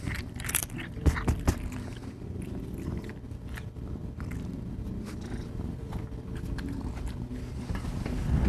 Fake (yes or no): yes